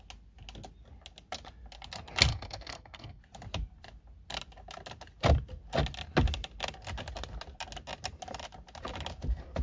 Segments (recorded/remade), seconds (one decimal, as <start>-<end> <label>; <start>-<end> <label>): 0.0-2.3 recorded; 2.3-3.2 remade; 3.2-9.6 recorded